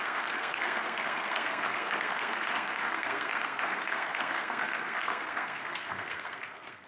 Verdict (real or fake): fake